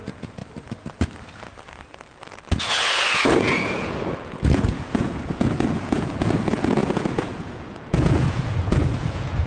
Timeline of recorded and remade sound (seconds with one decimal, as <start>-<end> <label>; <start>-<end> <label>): 0.0-0.4 remade; 0.4-2.6 recorded; 2.6-9.5 remade